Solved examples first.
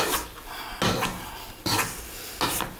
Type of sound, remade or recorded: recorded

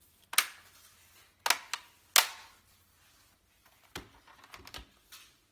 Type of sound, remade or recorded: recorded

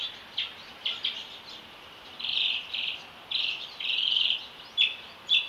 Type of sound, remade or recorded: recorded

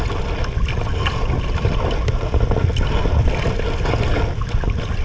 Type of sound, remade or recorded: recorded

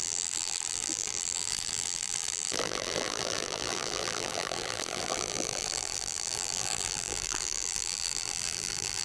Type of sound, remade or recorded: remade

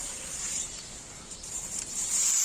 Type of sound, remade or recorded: remade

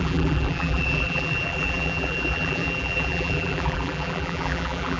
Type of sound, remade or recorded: remade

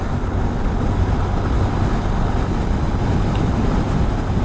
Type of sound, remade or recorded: recorded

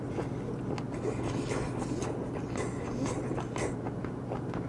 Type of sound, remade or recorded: recorded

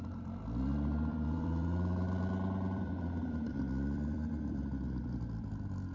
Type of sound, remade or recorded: remade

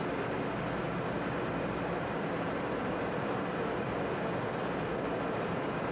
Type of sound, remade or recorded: recorded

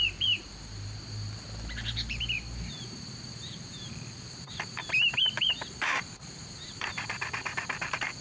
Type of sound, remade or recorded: remade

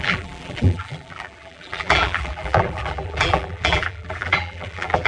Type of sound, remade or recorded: remade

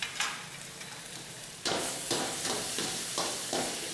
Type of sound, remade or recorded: remade